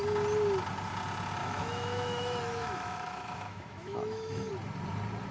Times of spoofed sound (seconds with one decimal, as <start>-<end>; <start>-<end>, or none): 1.4-4.5